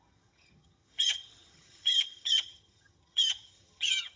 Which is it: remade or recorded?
remade